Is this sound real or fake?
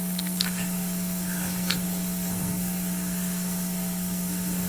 fake